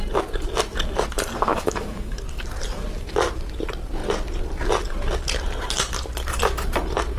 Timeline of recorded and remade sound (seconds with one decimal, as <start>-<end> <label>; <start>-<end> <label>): 0.0-1.5 recorded; 1.5-2.2 remade; 2.2-7.2 recorded